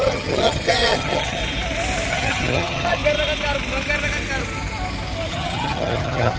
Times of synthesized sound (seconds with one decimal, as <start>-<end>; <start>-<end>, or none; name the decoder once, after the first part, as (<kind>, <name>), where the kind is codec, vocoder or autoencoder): 0.0-1.4 (vocoder, HiFi-GAN); 2.1-3.0; 5.3-6.4